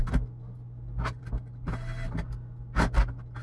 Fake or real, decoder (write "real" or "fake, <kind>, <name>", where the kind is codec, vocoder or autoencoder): real